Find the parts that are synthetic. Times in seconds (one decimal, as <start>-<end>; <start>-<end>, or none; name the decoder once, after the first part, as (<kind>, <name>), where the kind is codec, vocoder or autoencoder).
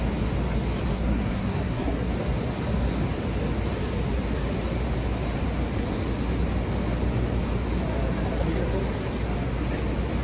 0.9-2.1 (codec, SNAC)